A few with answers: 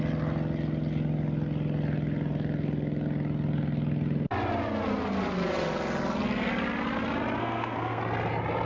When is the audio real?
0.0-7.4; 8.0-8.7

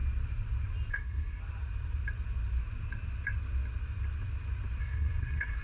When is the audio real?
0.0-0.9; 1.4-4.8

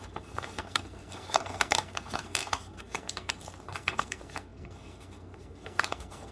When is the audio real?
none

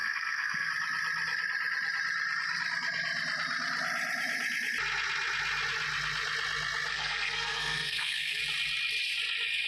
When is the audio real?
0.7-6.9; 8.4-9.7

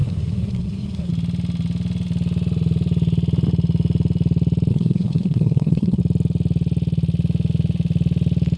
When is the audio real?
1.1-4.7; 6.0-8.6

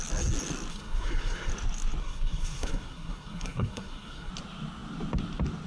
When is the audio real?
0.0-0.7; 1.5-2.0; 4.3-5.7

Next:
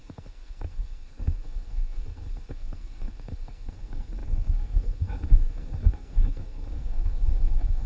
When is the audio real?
none